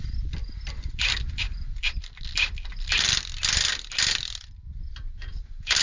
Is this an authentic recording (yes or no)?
yes